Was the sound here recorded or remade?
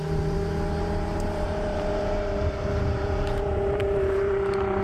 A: remade